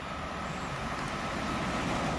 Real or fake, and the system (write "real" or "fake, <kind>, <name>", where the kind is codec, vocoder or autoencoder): real